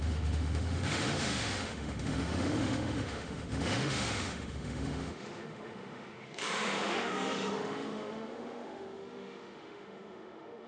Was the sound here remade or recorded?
remade